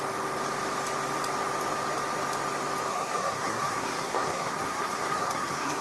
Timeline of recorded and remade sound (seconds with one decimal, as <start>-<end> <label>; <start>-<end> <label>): 0.0-2.9 recorded; 2.9-5.8 remade

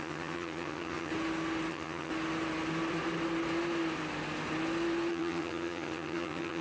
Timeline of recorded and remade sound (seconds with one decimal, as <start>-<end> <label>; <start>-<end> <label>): 0.0-1.1 remade; 1.1-1.7 recorded; 1.7-2.1 remade; 2.1-5.1 recorded; 5.1-6.6 remade

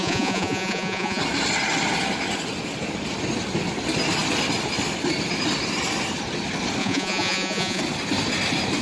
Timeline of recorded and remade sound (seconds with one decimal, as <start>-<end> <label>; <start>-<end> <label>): 0.0-1.2 remade; 1.2-6.8 recorded; 6.8-7.8 remade; 7.8-8.8 recorded

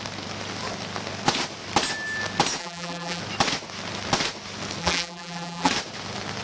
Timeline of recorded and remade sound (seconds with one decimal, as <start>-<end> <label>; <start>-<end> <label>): 0.0-2.6 recorded; 2.6-3.2 remade; 3.2-4.8 recorded; 4.8-5.7 remade; 5.7-6.4 recorded

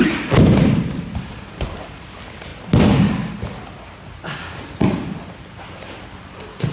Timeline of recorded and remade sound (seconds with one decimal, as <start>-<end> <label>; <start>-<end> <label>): 0.0-6.7 recorded

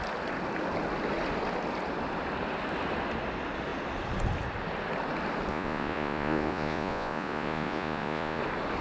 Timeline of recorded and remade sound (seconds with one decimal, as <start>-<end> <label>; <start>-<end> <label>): 0.0-5.5 recorded; 5.5-8.4 remade; 8.4-8.8 recorded